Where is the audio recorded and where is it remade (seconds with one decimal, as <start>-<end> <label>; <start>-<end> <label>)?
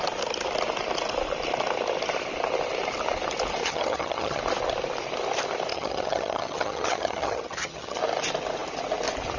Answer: 0.0-3.6 recorded; 3.6-4.4 remade; 4.4-5.7 recorded; 5.7-8.0 remade; 8.0-9.4 recorded